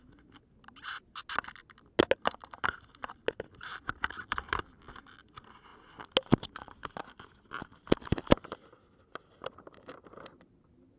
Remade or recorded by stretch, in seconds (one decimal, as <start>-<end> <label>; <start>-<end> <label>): 0.0-11.0 recorded